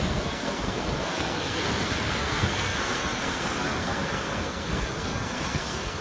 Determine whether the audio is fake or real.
fake